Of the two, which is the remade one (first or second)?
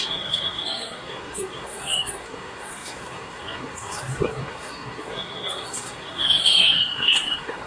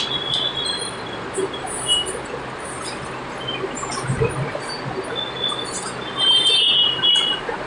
first